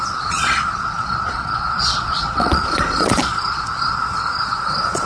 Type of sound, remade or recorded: remade